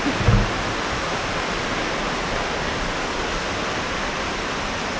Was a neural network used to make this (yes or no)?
no